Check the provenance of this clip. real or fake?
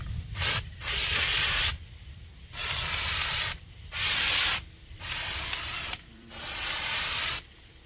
fake